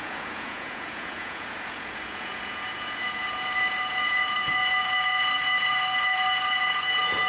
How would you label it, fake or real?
fake